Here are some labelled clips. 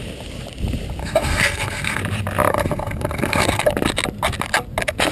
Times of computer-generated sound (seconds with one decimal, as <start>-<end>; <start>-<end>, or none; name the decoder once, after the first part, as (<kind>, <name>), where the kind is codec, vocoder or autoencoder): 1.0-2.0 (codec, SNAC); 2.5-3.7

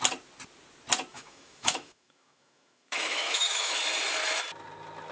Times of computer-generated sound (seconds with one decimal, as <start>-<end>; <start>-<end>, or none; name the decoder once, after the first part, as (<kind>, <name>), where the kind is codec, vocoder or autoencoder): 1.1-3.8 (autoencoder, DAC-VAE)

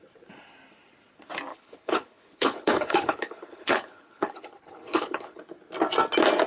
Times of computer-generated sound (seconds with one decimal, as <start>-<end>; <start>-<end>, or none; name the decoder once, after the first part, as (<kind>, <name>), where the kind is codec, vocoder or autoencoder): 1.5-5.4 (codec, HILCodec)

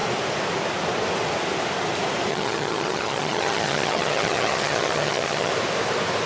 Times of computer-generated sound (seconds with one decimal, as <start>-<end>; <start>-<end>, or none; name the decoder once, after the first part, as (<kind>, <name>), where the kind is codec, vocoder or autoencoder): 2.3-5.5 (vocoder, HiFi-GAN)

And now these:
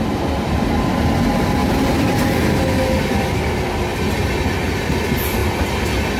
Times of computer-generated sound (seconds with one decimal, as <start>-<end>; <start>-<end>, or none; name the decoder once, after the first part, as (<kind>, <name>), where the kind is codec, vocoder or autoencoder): 1.6-2.4 (vocoder, BigVGAN v2)

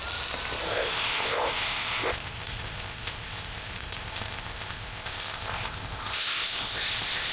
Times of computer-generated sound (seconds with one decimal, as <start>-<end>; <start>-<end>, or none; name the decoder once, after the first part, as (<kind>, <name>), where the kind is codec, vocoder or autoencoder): 0.7-7.3 (codec, ZipCodec)